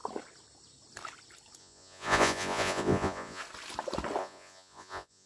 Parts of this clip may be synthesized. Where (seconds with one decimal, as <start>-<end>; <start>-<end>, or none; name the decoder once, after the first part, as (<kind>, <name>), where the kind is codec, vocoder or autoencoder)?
1.6-3.4 (vocoder, Vocos); 4.2-5.3

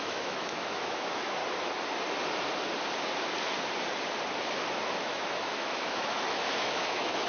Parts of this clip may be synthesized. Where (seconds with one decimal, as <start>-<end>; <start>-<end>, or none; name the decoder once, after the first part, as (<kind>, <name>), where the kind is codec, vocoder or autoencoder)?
0.0-1.4 (autoencoder, DAC-VAE); 5.0-7.3

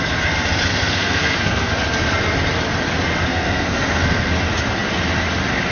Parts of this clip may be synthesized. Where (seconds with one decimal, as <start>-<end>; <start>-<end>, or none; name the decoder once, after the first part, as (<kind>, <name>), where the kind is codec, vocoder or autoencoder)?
0.7-1.7 (codec, SNAC); 3.3-4.3